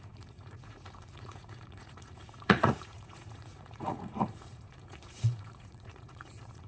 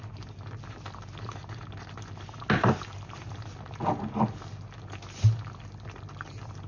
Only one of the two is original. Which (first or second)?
second